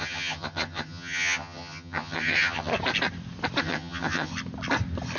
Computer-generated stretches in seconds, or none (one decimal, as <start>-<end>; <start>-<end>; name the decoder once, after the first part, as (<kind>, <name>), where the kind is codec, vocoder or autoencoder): 0.0-2.7 (vocoder, HiFi-GAN); 3.6-4.3